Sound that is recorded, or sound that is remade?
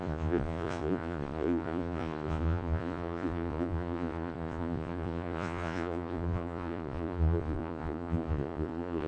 remade